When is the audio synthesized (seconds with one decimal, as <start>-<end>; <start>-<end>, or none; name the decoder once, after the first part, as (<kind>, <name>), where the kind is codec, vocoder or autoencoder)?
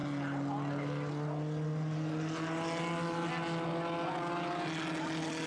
none